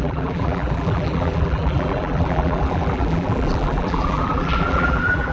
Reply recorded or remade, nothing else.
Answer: remade